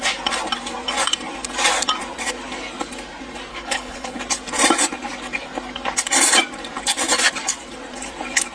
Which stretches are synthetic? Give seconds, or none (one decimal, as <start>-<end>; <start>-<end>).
3.5-4.2